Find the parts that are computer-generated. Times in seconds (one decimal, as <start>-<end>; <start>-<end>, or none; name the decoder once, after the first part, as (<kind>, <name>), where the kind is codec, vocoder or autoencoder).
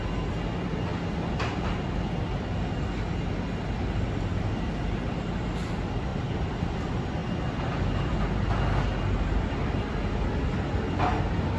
none